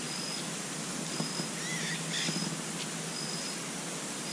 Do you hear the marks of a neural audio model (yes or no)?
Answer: no